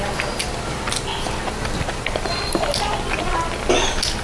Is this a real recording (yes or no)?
yes